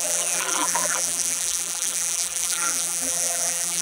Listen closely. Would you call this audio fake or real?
fake